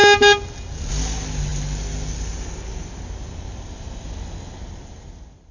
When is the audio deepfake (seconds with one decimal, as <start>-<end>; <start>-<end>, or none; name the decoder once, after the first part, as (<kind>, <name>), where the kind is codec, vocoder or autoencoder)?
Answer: 4.6-5.5 (vocoder, BigVGAN v2)